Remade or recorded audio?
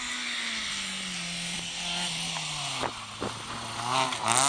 recorded